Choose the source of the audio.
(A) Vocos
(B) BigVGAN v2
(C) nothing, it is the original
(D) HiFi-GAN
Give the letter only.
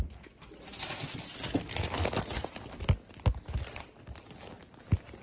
C